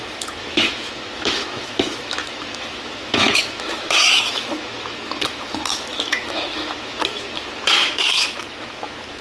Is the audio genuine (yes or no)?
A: no